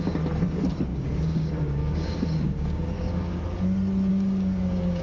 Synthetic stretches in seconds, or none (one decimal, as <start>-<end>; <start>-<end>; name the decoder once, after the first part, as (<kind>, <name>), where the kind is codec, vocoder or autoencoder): 0.9-3.4 (codec, DAC); 4.1-5.0